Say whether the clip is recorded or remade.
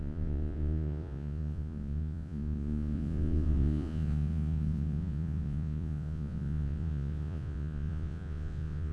remade